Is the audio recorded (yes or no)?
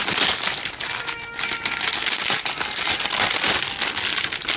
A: yes